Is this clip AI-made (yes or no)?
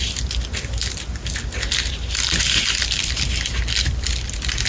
no